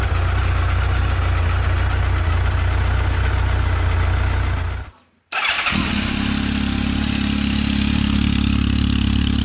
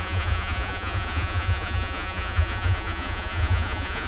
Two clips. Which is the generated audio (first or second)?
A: second